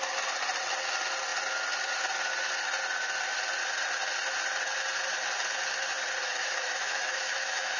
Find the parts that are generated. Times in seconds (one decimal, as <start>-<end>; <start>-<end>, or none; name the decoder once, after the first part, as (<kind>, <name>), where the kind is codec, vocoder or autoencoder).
6.4-7.8 (autoencoder, DAC-VAE)